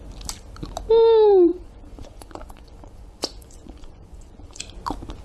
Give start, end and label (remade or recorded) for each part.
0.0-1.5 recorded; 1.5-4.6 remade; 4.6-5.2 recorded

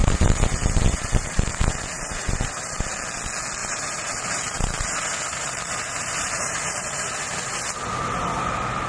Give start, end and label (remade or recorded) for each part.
0.0-2.8 remade; 2.8-3.6 recorded; 3.6-7.6 remade; 7.6-8.9 recorded

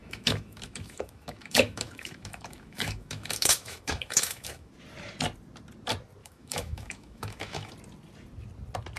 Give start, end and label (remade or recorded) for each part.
0.0-4.7 remade; 4.7-6.2 recorded; 6.2-7.7 remade; 7.7-9.0 recorded

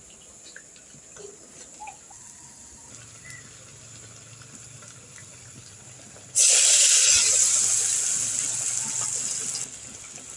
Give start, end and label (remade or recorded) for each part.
0.0-10.4 recorded

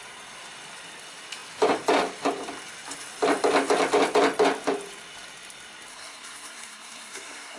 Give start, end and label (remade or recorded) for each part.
0.0-5.9 recorded; 5.9-7.6 remade

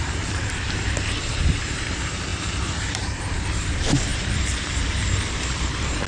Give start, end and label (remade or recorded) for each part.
0.0-6.1 remade